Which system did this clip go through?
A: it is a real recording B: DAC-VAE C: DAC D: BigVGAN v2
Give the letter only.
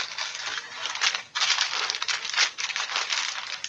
A